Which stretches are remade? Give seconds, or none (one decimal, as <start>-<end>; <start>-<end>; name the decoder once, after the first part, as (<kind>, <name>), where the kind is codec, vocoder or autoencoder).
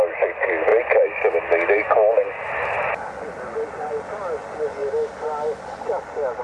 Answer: none